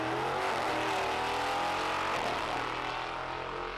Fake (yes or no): no